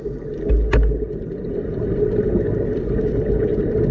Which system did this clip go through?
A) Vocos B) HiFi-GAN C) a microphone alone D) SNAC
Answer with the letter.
C